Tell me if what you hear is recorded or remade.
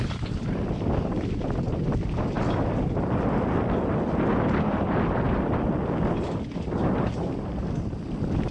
recorded